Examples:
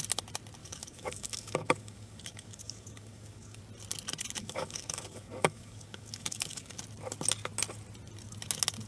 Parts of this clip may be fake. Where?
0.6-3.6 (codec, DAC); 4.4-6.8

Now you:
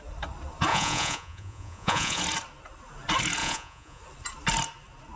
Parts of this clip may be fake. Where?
0.7-2.2 (vocoder, Vocos); 3.4-4.0

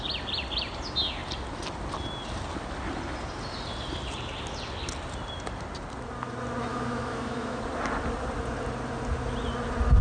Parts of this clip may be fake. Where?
6.7-7.6 (autoencoder, DAC-VAE)